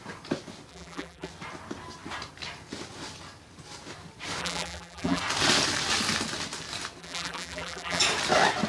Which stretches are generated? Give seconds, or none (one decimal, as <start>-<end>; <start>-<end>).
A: 0.7-1.3; 4.4-5.2; 7.0-8.0